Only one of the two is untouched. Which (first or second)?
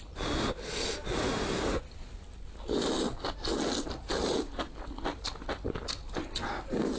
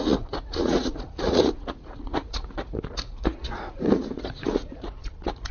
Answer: first